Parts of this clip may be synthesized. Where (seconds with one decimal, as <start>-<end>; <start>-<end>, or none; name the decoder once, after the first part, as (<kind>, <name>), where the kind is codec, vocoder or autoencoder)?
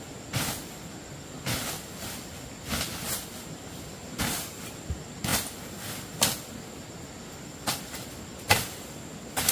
4.0-4.6 (vocoder, BigVGAN v2)